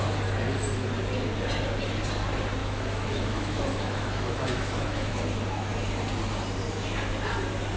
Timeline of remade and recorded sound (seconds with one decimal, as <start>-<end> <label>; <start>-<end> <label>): 0.0-2.6 recorded; 2.6-5.1 remade; 5.1-7.8 recorded